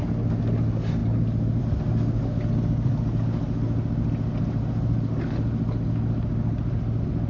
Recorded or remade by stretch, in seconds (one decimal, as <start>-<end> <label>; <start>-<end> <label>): 0.0-7.3 recorded